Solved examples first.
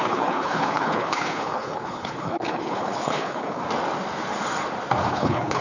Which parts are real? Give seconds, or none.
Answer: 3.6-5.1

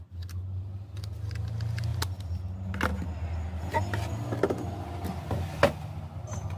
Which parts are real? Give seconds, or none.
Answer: 0.0-6.6

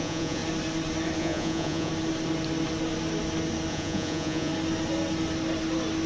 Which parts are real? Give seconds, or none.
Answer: 0.4-1.2; 1.9-3.7; 4.5-6.1